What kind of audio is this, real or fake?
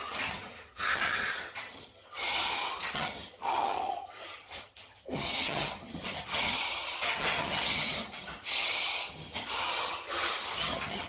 fake